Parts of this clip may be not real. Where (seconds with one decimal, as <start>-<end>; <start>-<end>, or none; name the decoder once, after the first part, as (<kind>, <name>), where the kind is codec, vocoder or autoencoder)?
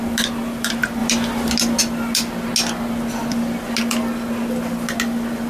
none